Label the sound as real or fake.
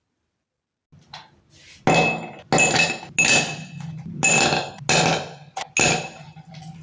real